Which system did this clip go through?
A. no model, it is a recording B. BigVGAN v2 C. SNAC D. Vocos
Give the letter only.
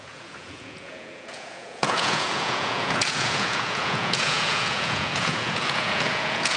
D